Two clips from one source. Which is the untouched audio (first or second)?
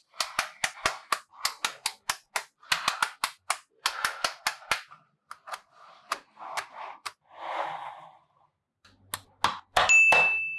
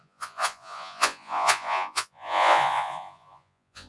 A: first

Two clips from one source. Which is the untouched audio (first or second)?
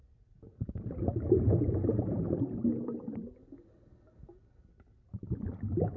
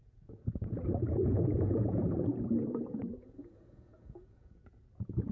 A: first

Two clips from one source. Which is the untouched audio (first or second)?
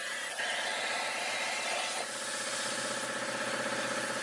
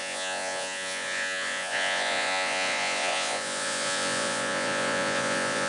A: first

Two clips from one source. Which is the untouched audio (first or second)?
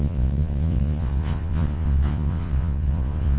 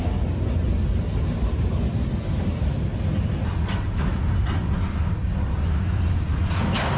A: second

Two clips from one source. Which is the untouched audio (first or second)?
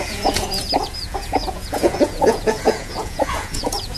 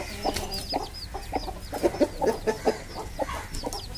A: second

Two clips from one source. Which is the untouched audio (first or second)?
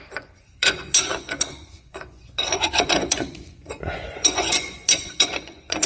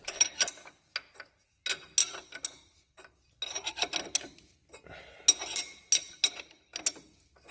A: second